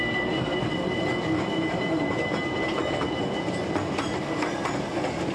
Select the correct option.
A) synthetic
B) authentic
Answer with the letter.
B